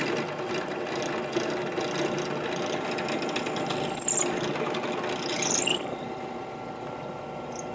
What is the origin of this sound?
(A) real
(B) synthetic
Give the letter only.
A